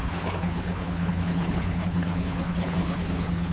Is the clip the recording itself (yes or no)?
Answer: no